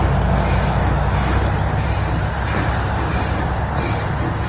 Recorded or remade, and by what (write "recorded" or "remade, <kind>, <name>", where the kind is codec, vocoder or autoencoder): recorded